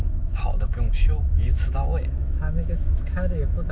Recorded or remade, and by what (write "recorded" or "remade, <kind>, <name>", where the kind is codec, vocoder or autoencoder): remade, autoencoder, DAC-VAE